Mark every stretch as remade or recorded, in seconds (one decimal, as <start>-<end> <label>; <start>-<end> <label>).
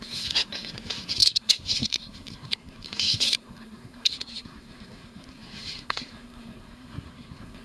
0.0-7.6 remade